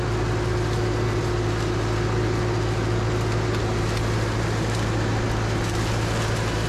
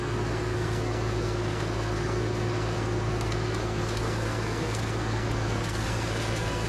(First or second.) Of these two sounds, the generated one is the second